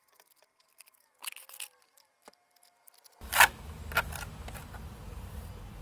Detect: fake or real real